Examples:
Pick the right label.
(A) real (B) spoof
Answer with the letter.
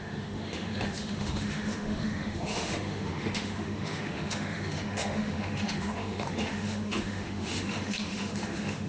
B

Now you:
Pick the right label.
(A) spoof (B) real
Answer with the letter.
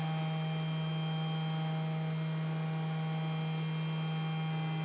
B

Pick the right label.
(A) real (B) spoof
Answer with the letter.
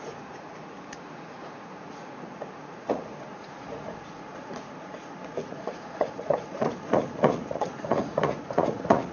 B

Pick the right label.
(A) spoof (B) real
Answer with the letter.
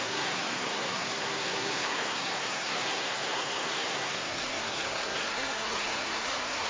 A